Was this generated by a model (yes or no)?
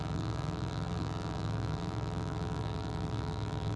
yes